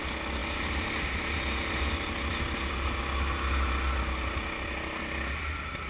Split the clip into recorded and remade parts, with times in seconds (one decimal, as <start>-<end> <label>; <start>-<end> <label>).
0.0-5.9 recorded